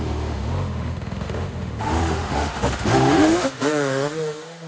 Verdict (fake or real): fake